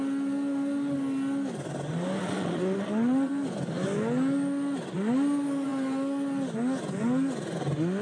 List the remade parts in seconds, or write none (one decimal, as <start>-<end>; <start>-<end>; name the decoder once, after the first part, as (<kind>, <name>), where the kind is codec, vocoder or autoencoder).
2.2-3.3 (vocoder, Vocos)